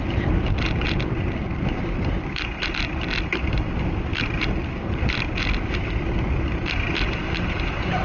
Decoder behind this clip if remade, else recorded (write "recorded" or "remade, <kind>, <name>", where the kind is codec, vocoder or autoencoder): remade, vocoder, BigVGAN v2